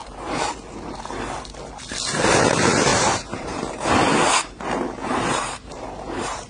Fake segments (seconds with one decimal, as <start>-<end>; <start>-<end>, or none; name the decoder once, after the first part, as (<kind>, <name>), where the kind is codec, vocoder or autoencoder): 0.0-0.5 (vocoder, BigVGAN v2); 2.9-6.5